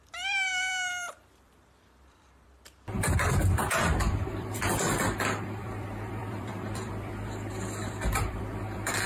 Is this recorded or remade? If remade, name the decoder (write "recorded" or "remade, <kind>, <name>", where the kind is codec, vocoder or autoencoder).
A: remade, vocoder, BigVGAN v2